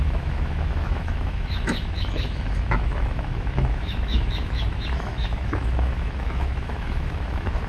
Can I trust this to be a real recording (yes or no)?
no